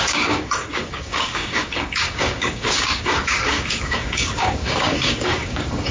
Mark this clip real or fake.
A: fake